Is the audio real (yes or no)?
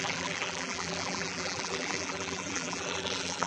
no